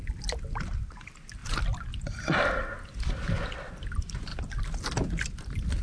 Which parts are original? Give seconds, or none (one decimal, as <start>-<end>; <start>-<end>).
1.4-3.7; 4.3-5.8